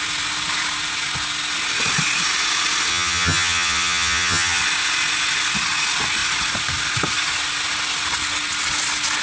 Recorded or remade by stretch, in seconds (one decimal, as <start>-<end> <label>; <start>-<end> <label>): 0.0-2.9 recorded; 2.9-4.6 remade; 4.6-9.2 recorded